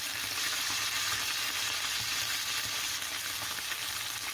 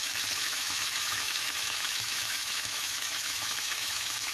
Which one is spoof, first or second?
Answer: second